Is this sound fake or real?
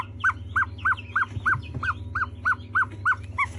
real